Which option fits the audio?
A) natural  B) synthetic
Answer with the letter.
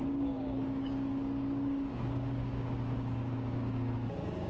B